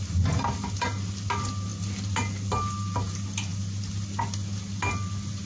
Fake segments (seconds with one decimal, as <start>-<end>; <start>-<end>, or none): none